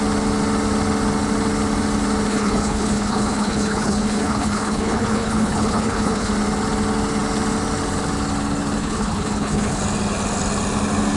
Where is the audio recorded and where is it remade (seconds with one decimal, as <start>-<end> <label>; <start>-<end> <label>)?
0.0-2.3 recorded; 2.3-6.3 remade; 6.3-8.8 recorded; 8.8-9.8 remade; 9.8-11.2 recorded